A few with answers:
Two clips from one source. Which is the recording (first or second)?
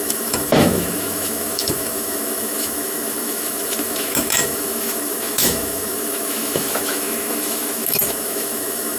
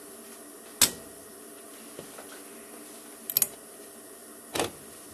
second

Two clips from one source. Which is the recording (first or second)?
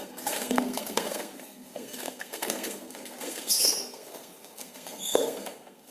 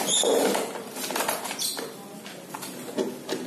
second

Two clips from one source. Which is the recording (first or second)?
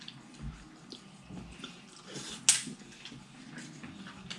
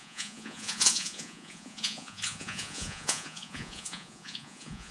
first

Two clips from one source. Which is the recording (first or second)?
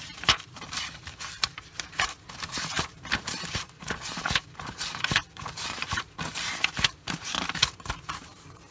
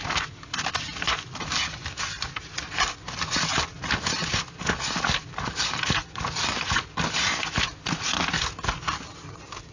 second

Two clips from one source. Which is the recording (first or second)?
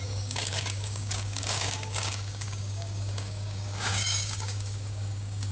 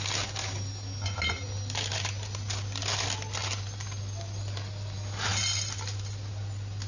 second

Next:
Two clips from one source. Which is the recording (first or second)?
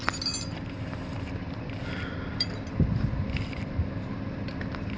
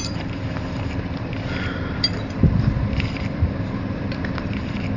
first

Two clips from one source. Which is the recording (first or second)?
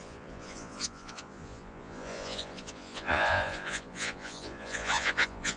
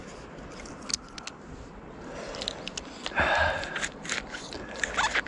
second